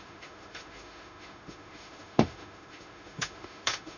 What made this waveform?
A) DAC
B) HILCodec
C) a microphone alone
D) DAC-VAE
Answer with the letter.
D